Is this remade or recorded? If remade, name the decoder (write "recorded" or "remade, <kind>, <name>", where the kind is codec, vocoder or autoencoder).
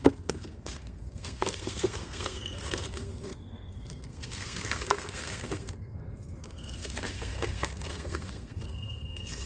remade, codec, SNAC